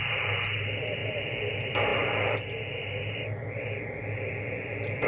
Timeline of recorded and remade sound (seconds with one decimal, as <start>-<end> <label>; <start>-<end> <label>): 0.0-5.1 recorded